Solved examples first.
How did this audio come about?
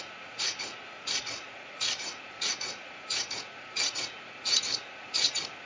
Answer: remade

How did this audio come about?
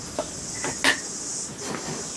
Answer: recorded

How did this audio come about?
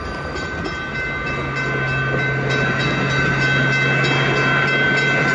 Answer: recorded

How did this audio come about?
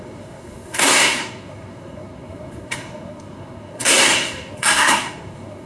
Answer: remade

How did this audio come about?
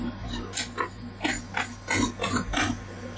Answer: recorded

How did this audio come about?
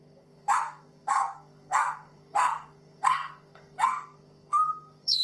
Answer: remade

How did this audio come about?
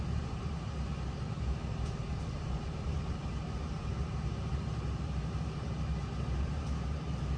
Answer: remade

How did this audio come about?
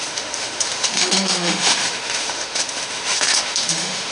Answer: remade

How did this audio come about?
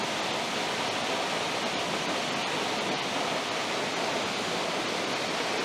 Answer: recorded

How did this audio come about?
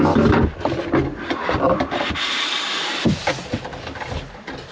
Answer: recorded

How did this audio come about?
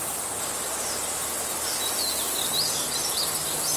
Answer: recorded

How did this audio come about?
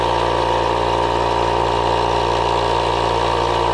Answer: recorded